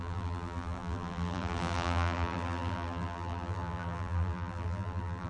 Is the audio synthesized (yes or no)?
yes